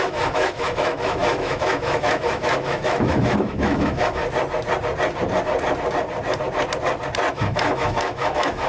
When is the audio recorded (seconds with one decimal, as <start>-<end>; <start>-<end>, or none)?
4.2-7.3